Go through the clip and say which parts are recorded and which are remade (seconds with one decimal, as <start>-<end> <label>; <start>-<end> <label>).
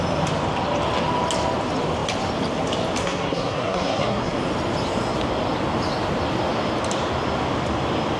0.0-3.0 recorded; 3.0-4.4 remade; 4.4-8.2 recorded